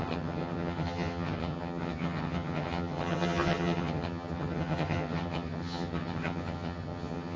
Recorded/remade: remade